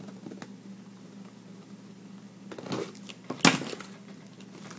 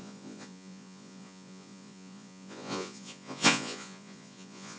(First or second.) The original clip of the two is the first